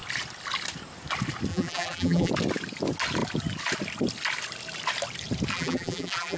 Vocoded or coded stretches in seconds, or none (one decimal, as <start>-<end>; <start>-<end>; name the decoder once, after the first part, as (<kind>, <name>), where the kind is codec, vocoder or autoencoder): 1.5-2.3 (vocoder, BigVGAN v2); 5.5-6.4